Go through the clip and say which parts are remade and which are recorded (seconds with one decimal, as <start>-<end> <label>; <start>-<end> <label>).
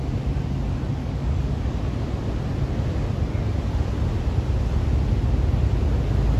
0.0-1.0 recorded; 1.0-1.8 remade; 1.8-6.4 recorded